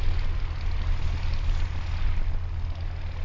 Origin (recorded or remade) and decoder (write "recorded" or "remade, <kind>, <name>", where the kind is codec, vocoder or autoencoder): recorded